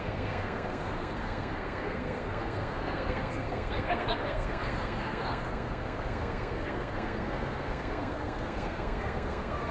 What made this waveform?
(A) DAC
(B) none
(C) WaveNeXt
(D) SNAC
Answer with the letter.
D